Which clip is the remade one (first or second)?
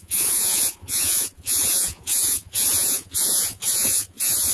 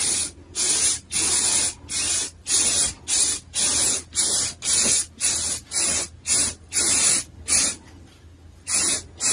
first